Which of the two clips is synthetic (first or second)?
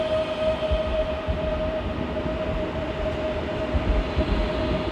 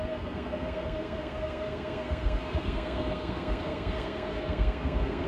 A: second